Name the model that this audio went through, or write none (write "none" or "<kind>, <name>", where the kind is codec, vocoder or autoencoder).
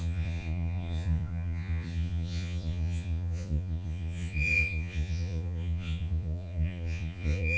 vocoder, Vocos